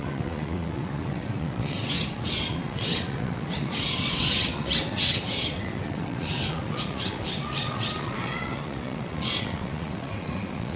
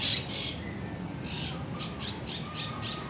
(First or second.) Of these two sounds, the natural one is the second